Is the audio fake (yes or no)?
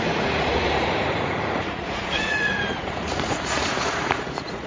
yes